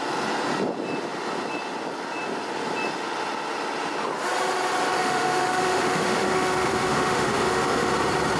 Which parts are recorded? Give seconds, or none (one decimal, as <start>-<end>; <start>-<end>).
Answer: 0.0-4.9; 7.9-8.4